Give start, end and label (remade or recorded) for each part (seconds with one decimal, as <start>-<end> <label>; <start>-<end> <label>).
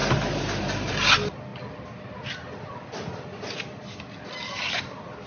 0.0-5.3 recorded